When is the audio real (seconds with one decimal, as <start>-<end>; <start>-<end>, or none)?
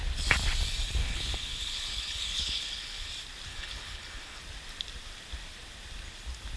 0.0-1.0; 3.1-3.5; 4.4-6.6